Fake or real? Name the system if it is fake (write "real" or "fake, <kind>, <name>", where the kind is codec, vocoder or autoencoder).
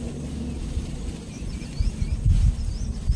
real